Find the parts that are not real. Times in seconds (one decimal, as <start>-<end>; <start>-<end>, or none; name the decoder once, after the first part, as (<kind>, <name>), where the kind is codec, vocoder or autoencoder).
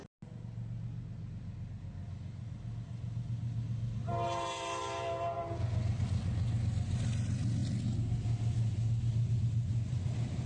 none